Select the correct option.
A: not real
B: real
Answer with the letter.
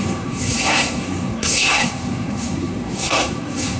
A